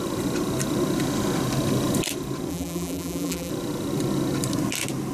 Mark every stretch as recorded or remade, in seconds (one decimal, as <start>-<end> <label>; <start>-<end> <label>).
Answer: 0.0-2.5 recorded; 2.5-3.5 remade; 3.5-5.1 recorded